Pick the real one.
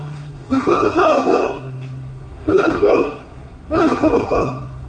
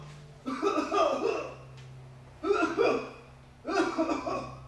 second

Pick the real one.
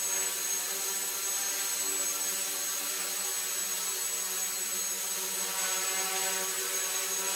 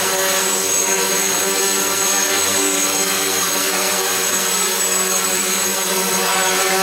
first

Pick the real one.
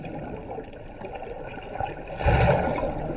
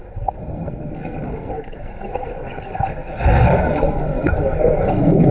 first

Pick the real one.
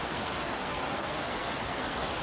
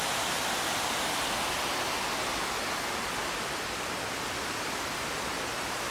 second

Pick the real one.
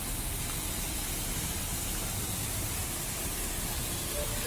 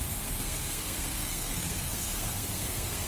first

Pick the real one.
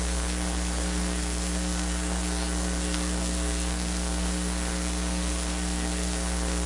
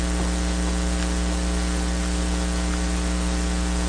second